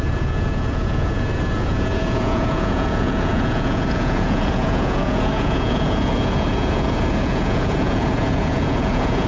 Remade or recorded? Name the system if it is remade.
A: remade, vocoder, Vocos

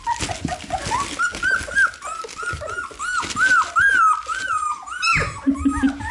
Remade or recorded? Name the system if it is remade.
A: recorded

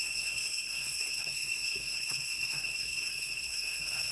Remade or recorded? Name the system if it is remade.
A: remade, codec, SNAC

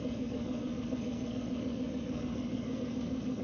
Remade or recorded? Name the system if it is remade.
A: remade, codec, SNAC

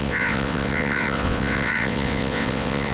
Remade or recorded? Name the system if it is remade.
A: remade, vocoder, WaveNeXt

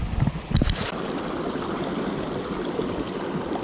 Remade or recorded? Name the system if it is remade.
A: recorded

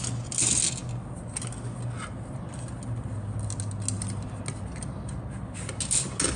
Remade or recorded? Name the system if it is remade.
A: recorded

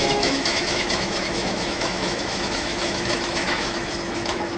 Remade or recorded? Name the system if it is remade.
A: remade, autoencoder, DAC-VAE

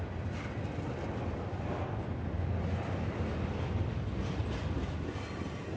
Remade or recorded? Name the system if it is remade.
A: recorded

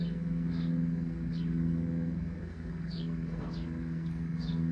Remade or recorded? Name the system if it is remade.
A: remade, codec, SNAC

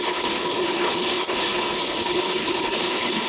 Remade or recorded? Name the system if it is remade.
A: remade, codec, HILCodec